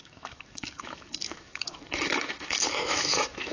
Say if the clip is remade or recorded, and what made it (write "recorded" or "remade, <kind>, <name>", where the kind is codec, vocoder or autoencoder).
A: remade, autoencoder, DAC-VAE